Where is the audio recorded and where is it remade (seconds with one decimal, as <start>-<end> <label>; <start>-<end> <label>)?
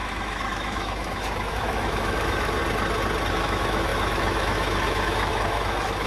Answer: 0.0-2.6 remade; 2.6-3.3 recorded; 3.3-6.1 remade